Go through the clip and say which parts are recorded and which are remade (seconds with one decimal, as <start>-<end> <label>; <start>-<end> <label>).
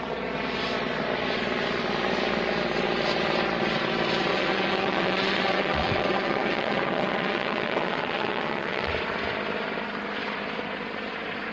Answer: 0.0-4.3 recorded; 4.3-8.9 remade; 8.9-11.5 recorded